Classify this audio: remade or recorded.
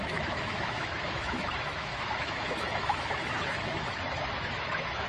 remade